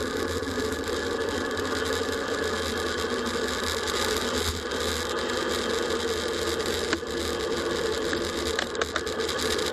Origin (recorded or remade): recorded